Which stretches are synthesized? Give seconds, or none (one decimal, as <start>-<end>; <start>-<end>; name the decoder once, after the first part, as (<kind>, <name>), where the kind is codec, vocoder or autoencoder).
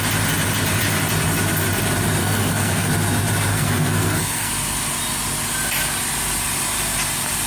2.2-2.9 (codec, SNAC); 3.5-4.5